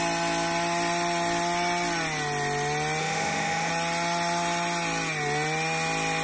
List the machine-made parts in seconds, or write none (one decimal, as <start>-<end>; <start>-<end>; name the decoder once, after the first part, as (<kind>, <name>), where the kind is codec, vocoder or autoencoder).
3.0-3.7 (autoencoder, DAC-VAE)